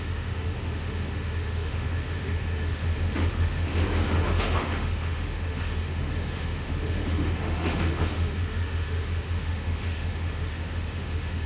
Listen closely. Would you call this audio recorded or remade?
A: remade